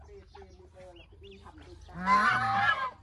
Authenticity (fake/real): real